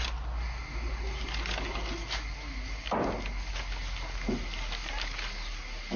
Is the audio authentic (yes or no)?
yes